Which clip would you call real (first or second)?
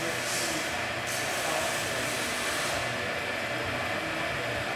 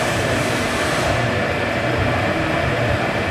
first